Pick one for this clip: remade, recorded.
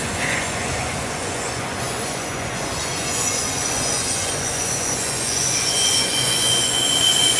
remade